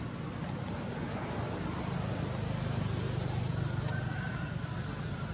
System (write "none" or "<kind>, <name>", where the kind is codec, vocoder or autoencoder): none